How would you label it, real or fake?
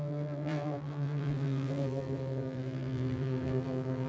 fake